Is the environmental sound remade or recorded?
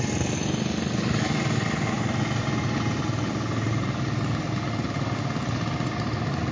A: recorded